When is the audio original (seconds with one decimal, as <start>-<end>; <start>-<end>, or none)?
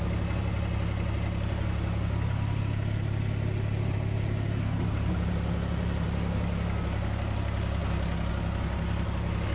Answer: 0.0-9.5